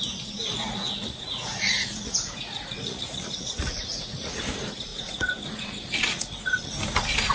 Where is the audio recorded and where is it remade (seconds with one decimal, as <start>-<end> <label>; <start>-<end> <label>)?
0.0-0.5 recorded; 0.5-4.4 remade; 4.4-4.9 recorded; 4.9-6.7 remade; 6.7-7.3 recorded